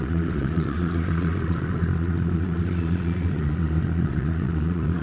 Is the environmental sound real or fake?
fake